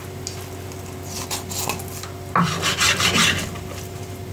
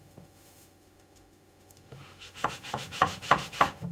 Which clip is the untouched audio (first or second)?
first